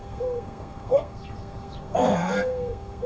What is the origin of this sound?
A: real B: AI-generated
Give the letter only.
B